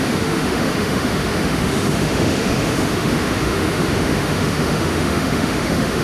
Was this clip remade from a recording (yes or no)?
yes